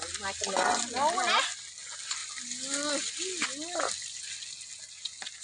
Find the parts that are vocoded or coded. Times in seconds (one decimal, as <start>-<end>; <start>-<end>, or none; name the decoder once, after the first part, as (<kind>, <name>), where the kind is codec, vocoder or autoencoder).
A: none